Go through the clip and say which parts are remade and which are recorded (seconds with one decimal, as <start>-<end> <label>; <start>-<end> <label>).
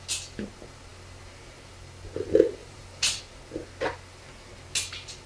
0.0-2.6 recorded; 2.6-3.2 remade; 3.2-5.3 recorded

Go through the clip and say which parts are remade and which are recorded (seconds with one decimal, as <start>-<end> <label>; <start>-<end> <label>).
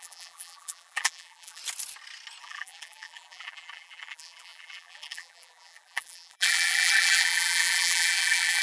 0.0-1.6 remade; 1.6-2.4 recorded; 2.4-8.6 remade